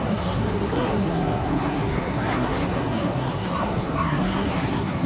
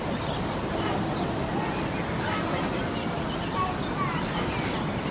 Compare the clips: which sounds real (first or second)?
second